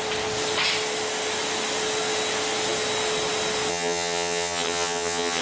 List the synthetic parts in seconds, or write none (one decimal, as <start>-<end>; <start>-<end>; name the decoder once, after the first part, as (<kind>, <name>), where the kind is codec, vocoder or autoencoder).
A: 3.7-5.4 (vocoder, HiFi-GAN)